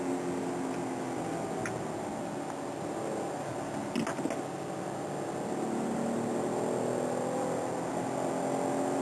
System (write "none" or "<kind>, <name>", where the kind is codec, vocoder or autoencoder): none